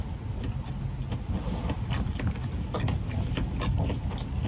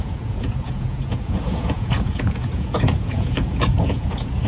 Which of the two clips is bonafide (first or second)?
first